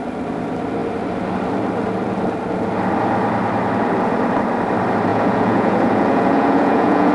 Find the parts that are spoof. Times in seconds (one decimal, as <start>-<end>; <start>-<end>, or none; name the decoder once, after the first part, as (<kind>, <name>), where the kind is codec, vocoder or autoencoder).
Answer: 5.1-7.1 (vocoder, Vocos)